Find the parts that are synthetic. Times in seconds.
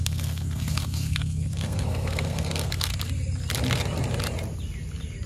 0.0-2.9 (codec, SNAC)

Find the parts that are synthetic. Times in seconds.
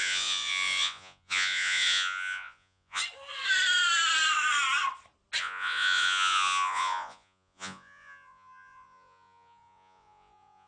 0.0-3.0 (vocoder, Vocos); 5.4-10.7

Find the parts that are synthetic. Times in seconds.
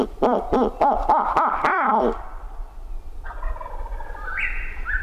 0.0-5.0 (vocoder, BigVGAN v2)